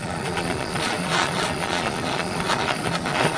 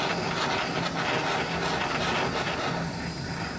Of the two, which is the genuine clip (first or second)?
second